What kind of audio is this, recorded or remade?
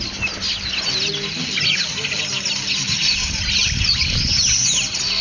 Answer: recorded